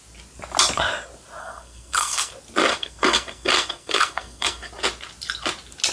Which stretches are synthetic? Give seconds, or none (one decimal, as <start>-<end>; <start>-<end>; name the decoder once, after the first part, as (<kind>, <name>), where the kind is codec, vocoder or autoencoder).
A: 1.4-2.3 (codec, SNAC); 2.7-4.7